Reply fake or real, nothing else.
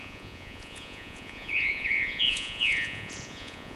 fake